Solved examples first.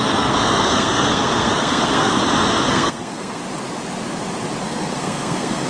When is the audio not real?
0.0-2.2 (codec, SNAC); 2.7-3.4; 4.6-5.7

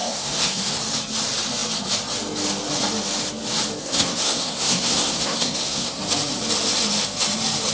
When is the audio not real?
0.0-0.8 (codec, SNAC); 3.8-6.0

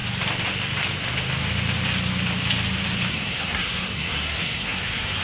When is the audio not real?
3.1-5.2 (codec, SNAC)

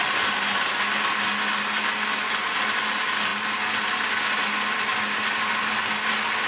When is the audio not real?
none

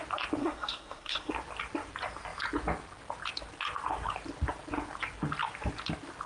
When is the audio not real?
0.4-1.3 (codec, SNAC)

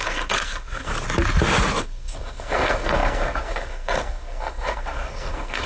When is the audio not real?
0.0-0.9 (codec, SNAC); 1.8-5.7

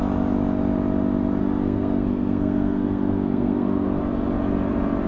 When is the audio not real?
1.4-4.0 (codec, SNAC)